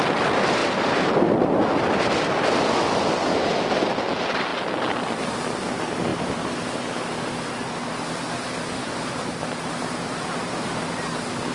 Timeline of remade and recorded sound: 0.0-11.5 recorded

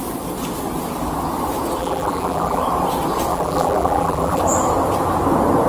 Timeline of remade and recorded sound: 0.0-1.8 recorded; 1.8-2.6 remade; 2.6-3.3 recorded; 3.3-4.4 remade; 4.4-5.7 recorded

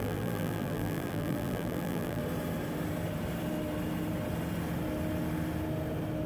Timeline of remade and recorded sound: 0.0-2.2 remade; 2.2-6.3 recorded

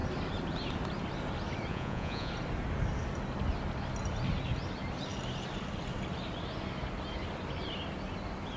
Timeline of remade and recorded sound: 0.0-1.7 recorded; 1.7-2.3 remade; 2.3-8.6 recorded

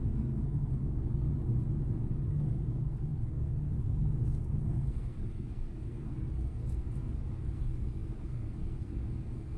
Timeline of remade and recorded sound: 0.0-1.3 remade; 1.3-2.3 recorded; 2.3-9.6 remade

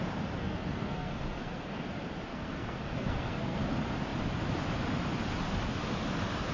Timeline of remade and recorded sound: 0.0-0.4 recorded; 0.4-1.8 remade; 1.8-2.3 recorded; 2.3-3.6 remade; 3.6-6.5 recorded

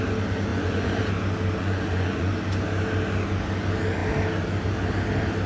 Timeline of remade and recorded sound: 0.0-0.5 recorded; 0.5-1.0 remade; 1.0-1.6 recorded; 1.6-2.3 remade; 2.3-5.5 recorded